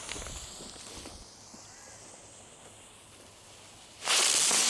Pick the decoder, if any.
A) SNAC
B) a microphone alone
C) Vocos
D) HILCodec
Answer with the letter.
B